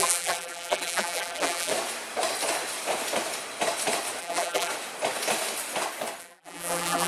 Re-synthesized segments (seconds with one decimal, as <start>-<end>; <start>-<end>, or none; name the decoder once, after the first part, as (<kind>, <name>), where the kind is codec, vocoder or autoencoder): 0.0-1.7 (vocoder, BigVGAN v2); 4.2-4.7; 6.2-7.1